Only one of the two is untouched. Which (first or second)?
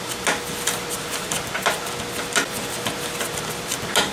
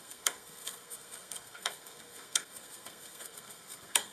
first